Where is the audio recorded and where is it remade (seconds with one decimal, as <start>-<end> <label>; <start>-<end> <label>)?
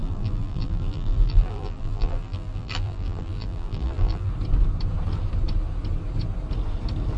0.0-4.3 remade; 4.3-7.2 recorded